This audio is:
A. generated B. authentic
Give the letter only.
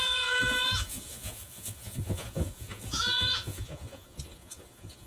A